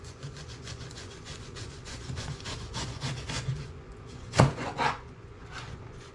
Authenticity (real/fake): fake